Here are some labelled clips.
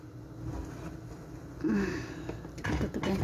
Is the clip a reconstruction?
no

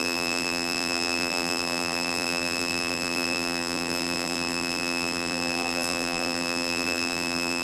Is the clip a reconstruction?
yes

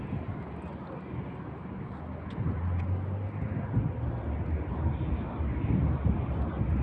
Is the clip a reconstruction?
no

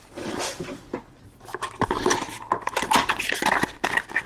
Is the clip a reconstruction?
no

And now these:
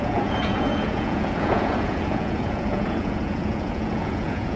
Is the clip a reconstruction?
yes